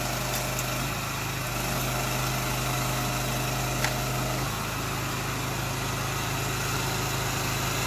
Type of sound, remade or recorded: recorded